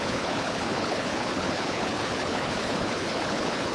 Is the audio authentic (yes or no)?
no